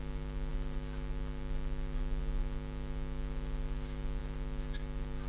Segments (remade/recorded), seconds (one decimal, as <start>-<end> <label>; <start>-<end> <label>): 0.0-5.3 recorded

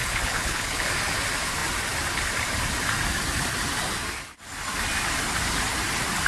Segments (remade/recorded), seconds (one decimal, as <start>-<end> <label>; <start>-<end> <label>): 0.0-0.9 remade; 0.9-6.3 recorded

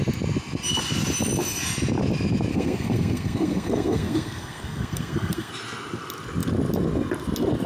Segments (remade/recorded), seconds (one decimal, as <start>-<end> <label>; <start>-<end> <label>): 0.0-2.5 recorded; 2.5-5.5 remade; 5.5-7.7 recorded

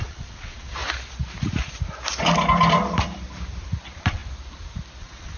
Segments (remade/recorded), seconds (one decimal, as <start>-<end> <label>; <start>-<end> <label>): 0.0-0.8 remade; 0.8-3.8 recorded; 3.8-4.2 remade; 4.2-5.0 recorded; 5.0-5.4 remade

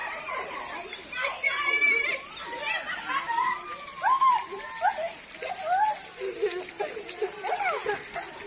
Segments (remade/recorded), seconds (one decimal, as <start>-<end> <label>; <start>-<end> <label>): 0.0-2.4 remade; 2.4-8.5 recorded

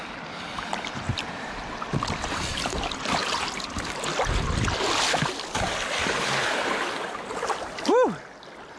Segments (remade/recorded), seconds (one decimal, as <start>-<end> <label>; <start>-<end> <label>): 0.0-8.8 recorded

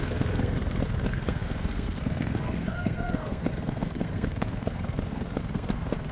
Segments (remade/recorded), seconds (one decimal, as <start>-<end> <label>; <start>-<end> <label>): 0.0-6.1 remade

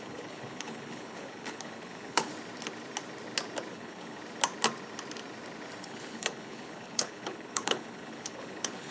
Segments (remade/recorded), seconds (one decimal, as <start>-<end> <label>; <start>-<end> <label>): 0.0-2.3 remade; 2.3-3.7 recorded; 3.7-4.2 remade; 4.2-5.8 recorded; 5.8-8.9 remade